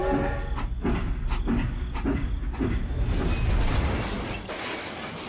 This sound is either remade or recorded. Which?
recorded